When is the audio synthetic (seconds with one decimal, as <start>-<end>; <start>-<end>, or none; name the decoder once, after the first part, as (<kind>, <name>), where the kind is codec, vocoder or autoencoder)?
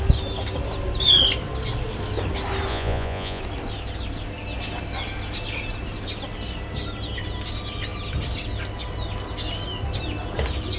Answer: 2.7-3.4 (vocoder, Vocos)